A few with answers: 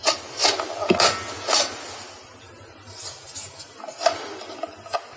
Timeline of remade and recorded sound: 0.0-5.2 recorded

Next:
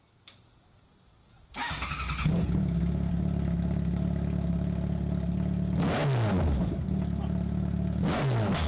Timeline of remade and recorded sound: 0.0-1.2 recorded; 1.2-3.1 remade; 3.1-8.7 recorded

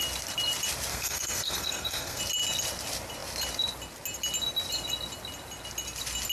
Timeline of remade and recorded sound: 0.0-0.9 recorded; 0.9-2.2 remade; 2.2-6.3 recorded

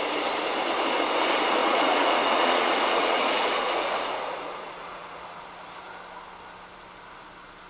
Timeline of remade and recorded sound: 0.0-1.6 recorded; 1.6-5.4 remade; 5.4-7.7 recorded